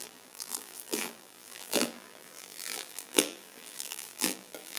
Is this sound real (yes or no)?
no